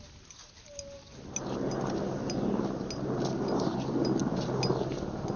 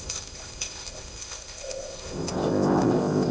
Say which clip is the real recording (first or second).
first